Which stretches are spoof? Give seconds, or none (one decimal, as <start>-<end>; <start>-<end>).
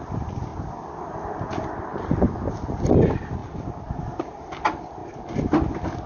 none